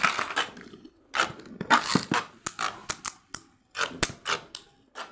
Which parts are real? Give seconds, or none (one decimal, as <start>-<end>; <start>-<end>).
0.0-5.1